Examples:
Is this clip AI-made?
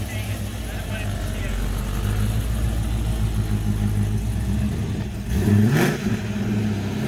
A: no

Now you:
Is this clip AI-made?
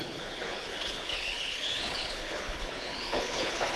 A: yes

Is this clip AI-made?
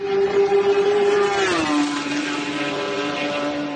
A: yes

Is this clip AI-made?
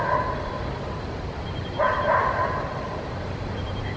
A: no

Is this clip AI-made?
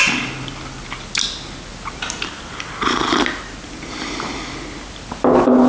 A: no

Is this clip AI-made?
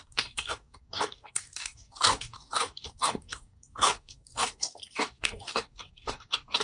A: yes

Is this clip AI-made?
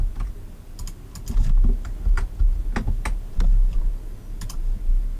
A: no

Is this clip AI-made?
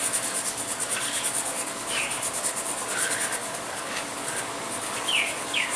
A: yes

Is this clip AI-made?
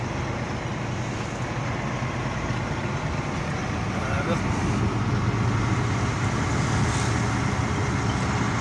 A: no